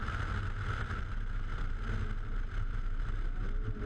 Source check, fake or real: real